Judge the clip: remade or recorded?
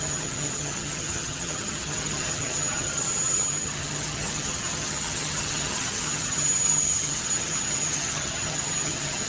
remade